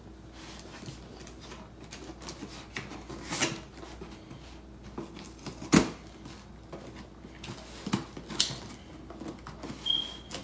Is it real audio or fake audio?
real